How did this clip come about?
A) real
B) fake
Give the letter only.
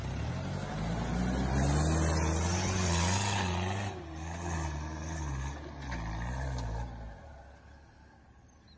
A